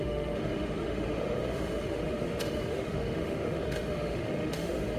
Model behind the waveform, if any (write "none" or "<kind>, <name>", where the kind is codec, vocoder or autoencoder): autoencoder, DAC-VAE